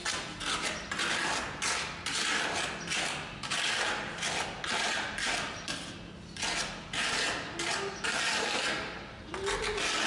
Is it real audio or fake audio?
real